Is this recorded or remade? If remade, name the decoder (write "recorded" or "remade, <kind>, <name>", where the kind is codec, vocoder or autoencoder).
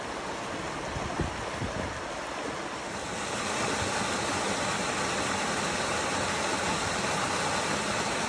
recorded